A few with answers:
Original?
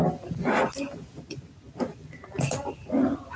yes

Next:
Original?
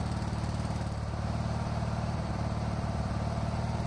no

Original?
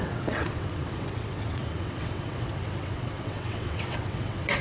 no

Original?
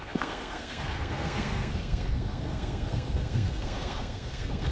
no